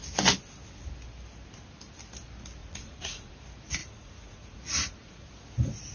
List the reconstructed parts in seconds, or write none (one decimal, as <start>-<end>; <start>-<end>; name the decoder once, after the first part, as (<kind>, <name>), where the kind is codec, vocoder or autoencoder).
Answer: 2.6-3.3 (vocoder, Vocos); 3.8-5.3